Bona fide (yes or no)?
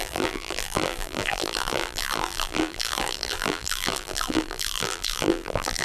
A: no